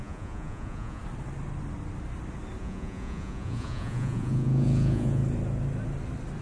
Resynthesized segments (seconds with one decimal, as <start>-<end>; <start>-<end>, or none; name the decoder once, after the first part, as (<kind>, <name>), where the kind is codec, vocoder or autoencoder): 0.0-1.0 (vocoder, Vocos); 2.6-5.2

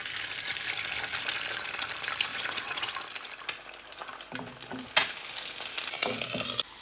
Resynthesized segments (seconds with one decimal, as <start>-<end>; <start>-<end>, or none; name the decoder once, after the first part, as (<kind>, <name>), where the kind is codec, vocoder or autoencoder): 2.3-2.9 (vocoder, Vocos)

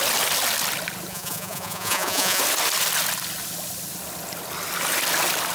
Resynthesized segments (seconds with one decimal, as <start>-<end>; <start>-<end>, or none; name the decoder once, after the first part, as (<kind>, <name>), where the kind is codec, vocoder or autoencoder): 1.1-2.4 (vocoder, Vocos)

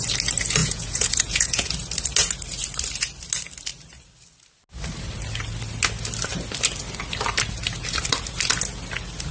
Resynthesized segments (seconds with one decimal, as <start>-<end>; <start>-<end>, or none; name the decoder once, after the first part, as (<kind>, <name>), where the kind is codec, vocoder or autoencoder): 0.6-1.7 (vocoder, Vocos)

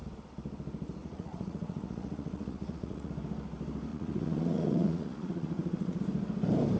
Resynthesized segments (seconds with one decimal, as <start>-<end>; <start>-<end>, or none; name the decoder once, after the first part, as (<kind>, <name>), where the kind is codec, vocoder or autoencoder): 1.0-3.1 (vocoder, Vocos); 3.9-6.0

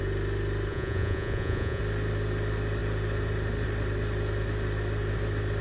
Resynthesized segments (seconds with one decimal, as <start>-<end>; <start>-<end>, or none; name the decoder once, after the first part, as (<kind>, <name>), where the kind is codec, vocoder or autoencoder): 0.7-1.8 (vocoder, Vocos)